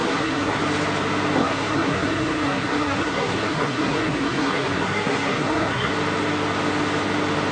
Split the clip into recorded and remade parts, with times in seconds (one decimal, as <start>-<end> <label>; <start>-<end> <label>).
0.0-0.6 remade; 0.6-1.4 recorded; 1.4-5.9 remade; 5.9-7.5 recorded